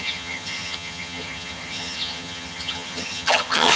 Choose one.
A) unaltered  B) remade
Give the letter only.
B